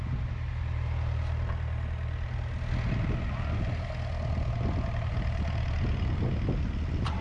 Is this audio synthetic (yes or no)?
no